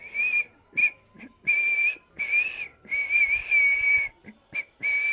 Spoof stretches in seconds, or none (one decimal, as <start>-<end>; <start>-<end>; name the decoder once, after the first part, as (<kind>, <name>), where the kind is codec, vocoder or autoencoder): none